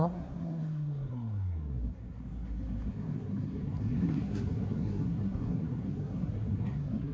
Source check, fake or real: fake